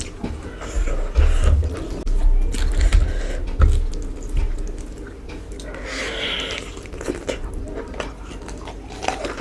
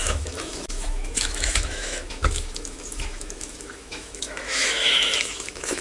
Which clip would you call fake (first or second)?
second